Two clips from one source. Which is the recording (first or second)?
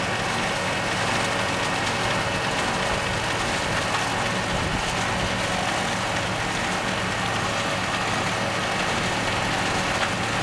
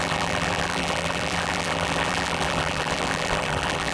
first